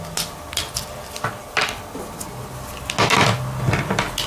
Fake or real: real